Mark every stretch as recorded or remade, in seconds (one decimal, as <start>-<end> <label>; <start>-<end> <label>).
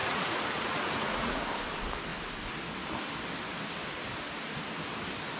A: 0.0-1.4 remade; 1.4-5.4 recorded